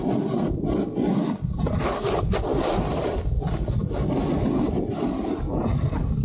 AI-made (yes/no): no